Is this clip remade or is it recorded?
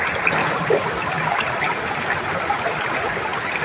recorded